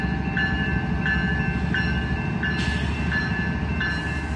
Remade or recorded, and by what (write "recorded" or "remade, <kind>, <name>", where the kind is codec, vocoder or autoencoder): recorded